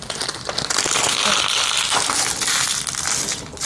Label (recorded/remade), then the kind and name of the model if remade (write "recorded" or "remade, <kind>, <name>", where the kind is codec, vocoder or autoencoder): recorded